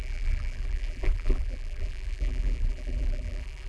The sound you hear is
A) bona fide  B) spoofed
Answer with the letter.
B